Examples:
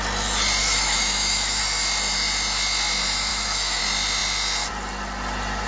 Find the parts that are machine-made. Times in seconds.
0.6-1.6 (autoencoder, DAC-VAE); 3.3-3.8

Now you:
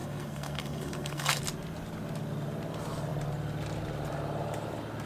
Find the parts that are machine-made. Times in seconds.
0.0-1.4 (codec, SNAC)

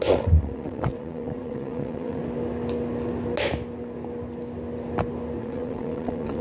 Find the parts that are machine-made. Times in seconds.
0.0-2.2 (vocoder, WaveNeXt); 5.4-6.4

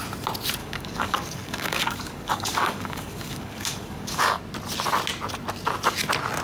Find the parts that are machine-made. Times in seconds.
0.6-4.4 (codec, DAC)

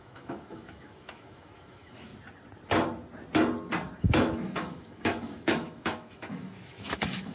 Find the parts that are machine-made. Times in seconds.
0.0-2.1 (autoencoder, DAC-VAE); 4.0-7.3